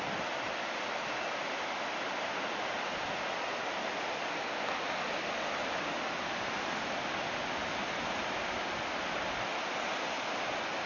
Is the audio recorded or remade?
recorded